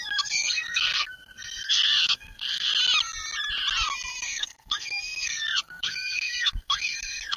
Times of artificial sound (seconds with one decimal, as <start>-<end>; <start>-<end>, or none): 0.0-2.7; 4.2-7.4